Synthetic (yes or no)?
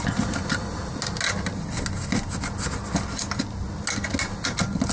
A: no